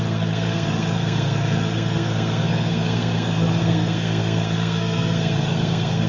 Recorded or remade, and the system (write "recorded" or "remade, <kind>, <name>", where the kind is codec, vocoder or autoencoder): remade, codec, SNAC